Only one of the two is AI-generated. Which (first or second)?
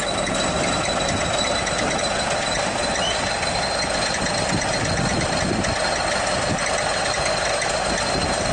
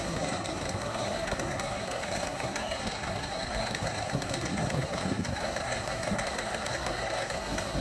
second